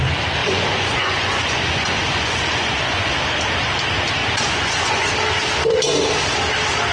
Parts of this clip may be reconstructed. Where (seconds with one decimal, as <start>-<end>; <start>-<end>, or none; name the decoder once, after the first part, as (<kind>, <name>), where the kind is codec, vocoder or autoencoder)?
0.4-3.1 (vocoder, Vocos); 4.2-5.1